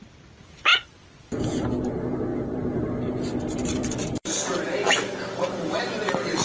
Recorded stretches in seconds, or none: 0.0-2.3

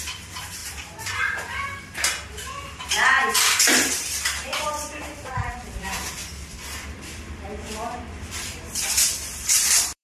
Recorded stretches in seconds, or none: 6.2-6.8

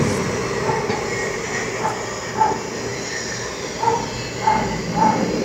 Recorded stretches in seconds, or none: 0.0-0.4; 1.5-2.9

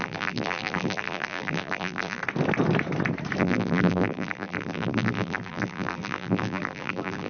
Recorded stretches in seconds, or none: 2.2-3.4

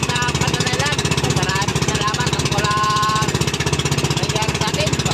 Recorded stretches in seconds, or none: none